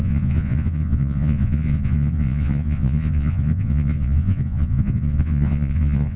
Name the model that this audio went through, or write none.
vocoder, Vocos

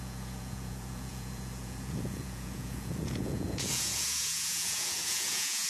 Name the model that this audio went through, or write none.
vocoder, Vocos